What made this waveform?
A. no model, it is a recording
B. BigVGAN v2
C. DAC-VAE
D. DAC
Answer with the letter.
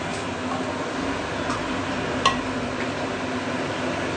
A